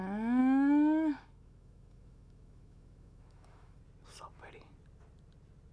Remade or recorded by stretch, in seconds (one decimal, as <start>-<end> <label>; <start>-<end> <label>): 0.0-0.4 recorded; 0.4-3.8 remade; 3.8-5.7 recorded

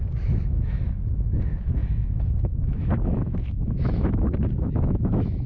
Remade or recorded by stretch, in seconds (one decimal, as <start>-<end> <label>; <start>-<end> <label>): 0.0-5.5 remade